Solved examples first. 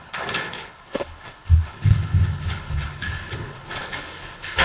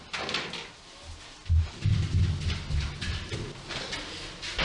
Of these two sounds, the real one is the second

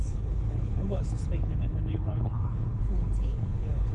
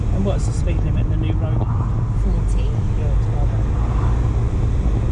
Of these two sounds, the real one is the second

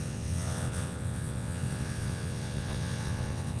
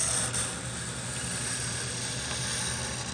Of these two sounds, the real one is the second